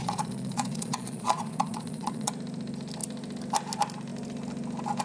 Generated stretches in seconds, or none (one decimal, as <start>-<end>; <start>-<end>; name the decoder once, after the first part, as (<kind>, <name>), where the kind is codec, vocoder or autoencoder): 0.0-2.3 (vocoder, Vocos)